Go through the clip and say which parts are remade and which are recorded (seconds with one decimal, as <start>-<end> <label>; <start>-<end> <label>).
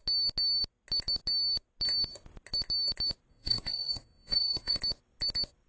0.0-3.3 recorded; 3.3-4.8 remade; 4.8-5.7 recorded